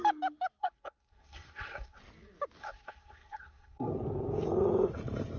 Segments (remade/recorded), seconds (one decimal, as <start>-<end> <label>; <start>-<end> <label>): 0.0-0.6 recorded; 0.6-2.0 remade; 2.0-2.6 recorded; 2.6-3.9 remade; 3.9-5.4 recorded